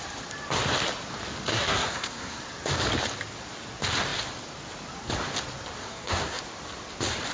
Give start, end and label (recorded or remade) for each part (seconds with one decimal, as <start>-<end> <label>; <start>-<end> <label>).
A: 0.0-1.5 recorded; 1.5-2.4 remade; 2.4-5.8 recorded; 5.8-6.4 remade; 6.4-7.3 recorded